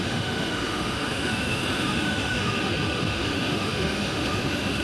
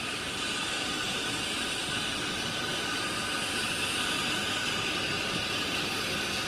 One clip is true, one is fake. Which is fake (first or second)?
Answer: first